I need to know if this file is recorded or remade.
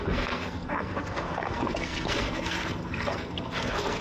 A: remade